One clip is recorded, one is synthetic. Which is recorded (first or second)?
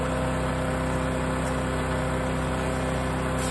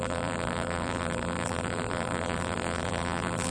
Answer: first